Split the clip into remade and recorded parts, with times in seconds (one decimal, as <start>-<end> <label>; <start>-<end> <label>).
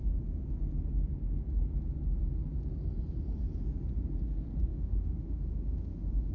0.0-4.7 recorded; 4.7-6.3 remade